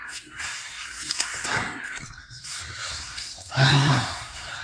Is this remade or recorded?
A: remade